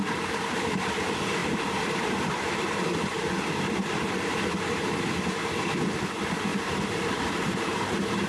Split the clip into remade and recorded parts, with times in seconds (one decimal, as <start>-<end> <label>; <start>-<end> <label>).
0.0-1.4 recorded; 1.4-5.0 remade; 5.0-6.5 recorded; 6.5-8.3 remade